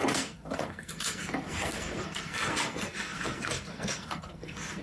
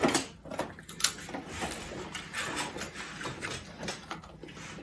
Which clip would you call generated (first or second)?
first